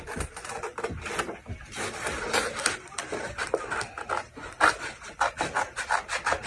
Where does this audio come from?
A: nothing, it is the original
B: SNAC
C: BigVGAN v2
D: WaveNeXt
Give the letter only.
A